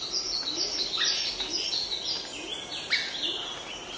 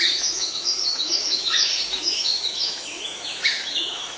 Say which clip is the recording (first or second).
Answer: first